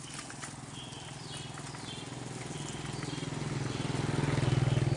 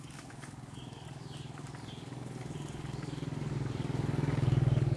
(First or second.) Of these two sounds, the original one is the first